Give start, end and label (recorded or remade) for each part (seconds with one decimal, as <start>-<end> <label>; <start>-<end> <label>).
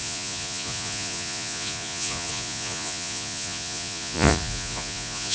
0.0-5.3 remade